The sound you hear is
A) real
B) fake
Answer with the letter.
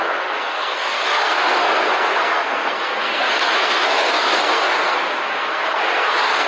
B